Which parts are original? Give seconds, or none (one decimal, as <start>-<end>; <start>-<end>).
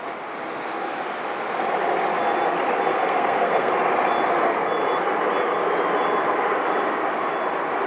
0.0-2.9; 3.7-7.9